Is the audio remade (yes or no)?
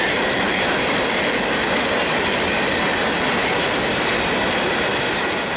no